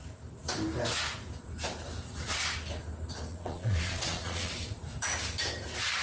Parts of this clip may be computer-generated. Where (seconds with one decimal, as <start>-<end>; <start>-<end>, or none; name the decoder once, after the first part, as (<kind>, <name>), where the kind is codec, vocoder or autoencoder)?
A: 3.3-4.5 (vocoder, Vocos)